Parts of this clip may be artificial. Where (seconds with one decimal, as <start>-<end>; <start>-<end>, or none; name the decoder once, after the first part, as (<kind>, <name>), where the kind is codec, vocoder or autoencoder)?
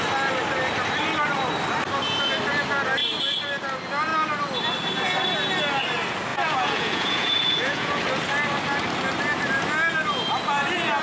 6.3-8.0 (vocoder, Vocos)